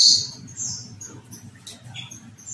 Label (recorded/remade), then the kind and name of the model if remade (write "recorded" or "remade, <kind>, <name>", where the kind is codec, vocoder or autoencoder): recorded